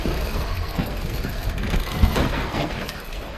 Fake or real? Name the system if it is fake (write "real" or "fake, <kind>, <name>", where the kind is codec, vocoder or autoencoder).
fake, codec, SNAC